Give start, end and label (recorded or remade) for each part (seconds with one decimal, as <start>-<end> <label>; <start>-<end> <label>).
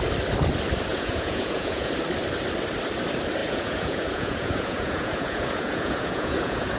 0.0-0.9 recorded; 0.9-1.9 remade; 1.9-3.4 recorded; 3.4-6.8 remade